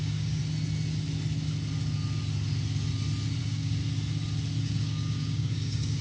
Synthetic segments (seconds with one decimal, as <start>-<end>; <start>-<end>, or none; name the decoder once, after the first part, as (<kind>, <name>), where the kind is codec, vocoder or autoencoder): 0.0-0.4 (codec, DAC); 3.4-3.8; 4.6-6.0